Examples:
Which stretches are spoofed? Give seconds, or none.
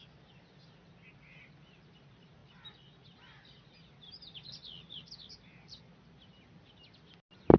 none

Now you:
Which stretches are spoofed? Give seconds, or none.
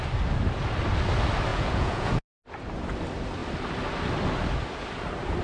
1.5-2.2 (vocoder, Vocos)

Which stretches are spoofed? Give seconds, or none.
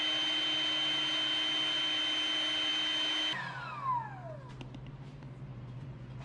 5.5-6.2 (vocoder, Vocos)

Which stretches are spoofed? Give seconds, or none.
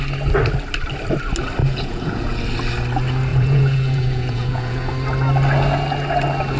1.6-2.4 (vocoder, Vocos); 3.3-4.9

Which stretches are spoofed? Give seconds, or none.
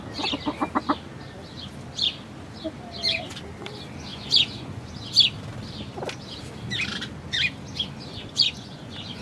4.1-4.9 (vocoder, Vocos); 8.1-9.2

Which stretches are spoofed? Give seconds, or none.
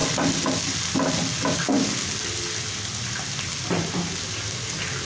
none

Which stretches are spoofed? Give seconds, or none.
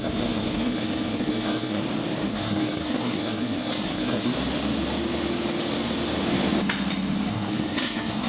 0.0-1.8 (codec, SNAC); 2.3-4.3; 7.3-8.3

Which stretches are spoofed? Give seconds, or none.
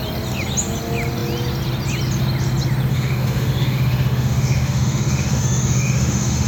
2.9-6.5 (autoencoder, DAC-VAE)